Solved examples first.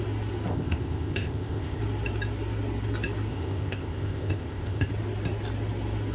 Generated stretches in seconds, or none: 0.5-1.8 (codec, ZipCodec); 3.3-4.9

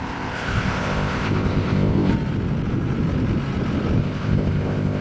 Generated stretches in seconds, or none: 0.0-2.1 (codec, ZipCodec); 4.0-5.0

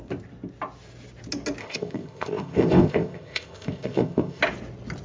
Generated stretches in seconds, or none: 1.6-4.4 (codec, ZipCodec)

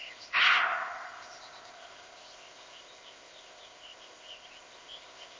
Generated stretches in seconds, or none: 0.0-5.4 (codec, ZipCodec)

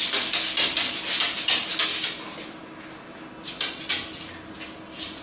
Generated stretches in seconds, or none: none